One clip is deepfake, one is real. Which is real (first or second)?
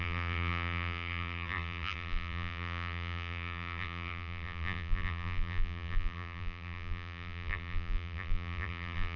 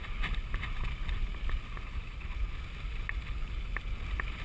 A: second